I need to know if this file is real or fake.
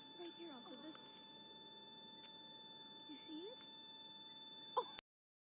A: real